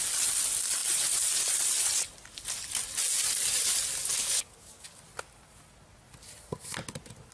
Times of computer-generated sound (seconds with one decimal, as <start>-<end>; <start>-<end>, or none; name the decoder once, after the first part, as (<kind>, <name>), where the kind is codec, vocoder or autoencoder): 4.2-5.0 (codec, DAC)